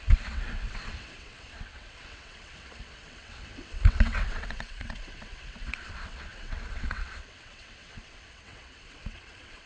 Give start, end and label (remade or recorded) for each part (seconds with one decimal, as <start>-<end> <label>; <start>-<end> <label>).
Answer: 0.0-9.7 remade